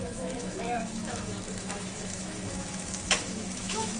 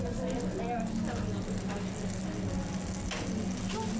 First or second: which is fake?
first